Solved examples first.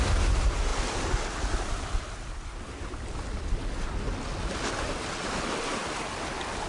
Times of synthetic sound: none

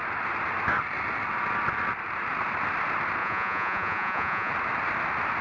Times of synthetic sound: 3.2-4.5 (vocoder, Vocos)

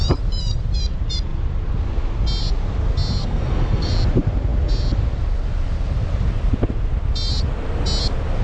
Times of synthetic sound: 3.2-3.9 (codec, SNAC)

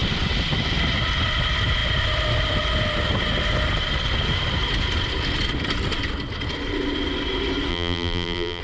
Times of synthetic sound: 7.7-8.6 (vocoder, BigVGAN v2)

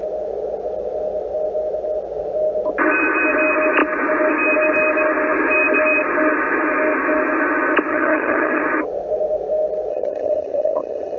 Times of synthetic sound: 7.9-8.6 (vocoder, HiFi-GAN); 9.9-11.2